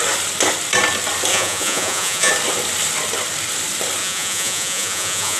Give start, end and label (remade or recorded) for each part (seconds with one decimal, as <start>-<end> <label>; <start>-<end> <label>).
0.0-1.3 recorded; 1.3-2.3 remade; 2.3-4.0 recorded; 4.0-5.4 remade